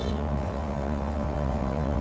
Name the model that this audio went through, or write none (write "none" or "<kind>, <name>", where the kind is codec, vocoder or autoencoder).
vocoder, WaveNeXt